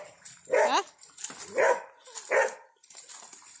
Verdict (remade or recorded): recorded